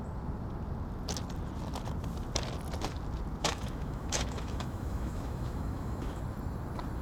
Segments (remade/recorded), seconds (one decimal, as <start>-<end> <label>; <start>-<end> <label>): 0.0-3.4 recorded; 3.4-6.2 remade; 6.2-7.0 recorded